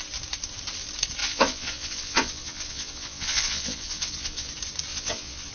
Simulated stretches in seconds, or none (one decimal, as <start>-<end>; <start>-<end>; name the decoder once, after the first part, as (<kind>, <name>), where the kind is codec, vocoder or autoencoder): 1.2-4.5 (vocoder, WaveNeXt); 4.9-5.5